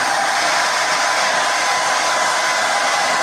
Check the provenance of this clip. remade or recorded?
recorded